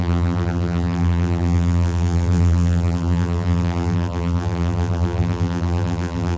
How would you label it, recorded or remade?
remade